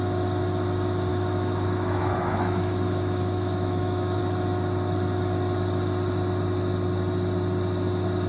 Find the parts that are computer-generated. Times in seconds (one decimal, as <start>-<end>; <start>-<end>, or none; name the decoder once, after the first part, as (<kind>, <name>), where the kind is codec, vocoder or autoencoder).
1.1-4.2 (autoencoder, DAC-VAE)